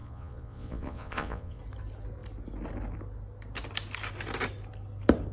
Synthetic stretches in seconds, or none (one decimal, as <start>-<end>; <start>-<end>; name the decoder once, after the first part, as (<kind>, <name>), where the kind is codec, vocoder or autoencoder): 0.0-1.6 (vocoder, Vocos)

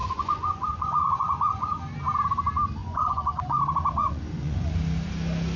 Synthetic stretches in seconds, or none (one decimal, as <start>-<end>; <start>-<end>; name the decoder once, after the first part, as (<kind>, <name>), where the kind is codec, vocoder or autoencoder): 0.0-1.8 (vocoder, Vocos); 2.8-3.6; 4.0-4.7

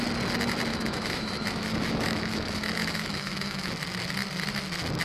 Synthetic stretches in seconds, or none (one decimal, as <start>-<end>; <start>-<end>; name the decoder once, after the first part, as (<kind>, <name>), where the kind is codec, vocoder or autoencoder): 0.7-3.7 (autoencoder, DAC-VAE)